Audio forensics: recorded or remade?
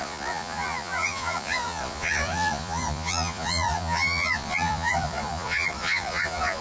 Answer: remade